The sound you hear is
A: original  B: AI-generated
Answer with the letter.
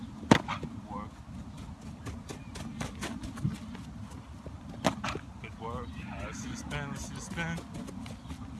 A